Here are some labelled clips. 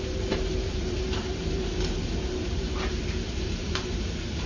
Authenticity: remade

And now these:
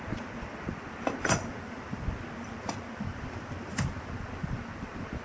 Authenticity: recorded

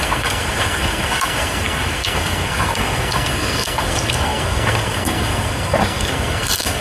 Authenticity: remade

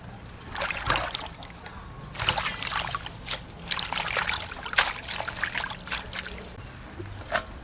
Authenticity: recorded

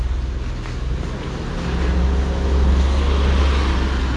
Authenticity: recorded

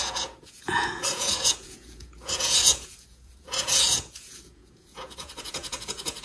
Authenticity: remade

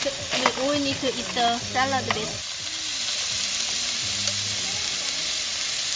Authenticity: recorded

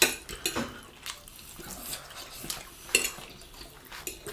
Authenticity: recorded